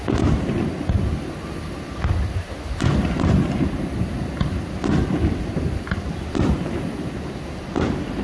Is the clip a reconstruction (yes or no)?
no